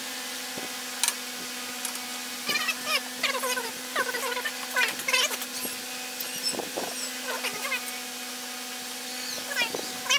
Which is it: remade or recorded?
recorded